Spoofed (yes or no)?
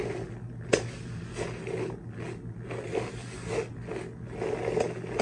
no